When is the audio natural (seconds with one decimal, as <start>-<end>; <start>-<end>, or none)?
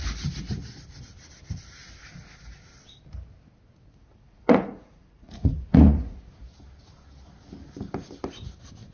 0.0-4.0; 6.3-8.9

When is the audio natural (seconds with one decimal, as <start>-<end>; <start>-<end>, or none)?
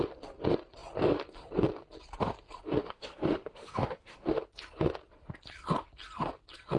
0.0-2.8; 4.4-6.8